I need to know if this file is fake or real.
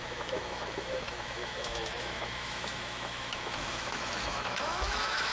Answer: fake